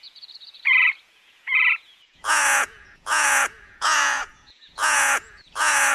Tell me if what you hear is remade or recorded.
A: remade